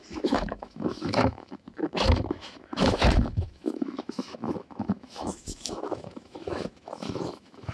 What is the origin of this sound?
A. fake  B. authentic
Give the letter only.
A